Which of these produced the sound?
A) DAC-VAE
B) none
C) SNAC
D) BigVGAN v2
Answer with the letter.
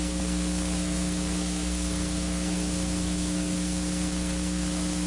C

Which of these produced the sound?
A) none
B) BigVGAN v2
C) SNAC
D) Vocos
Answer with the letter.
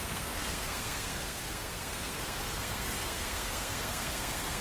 C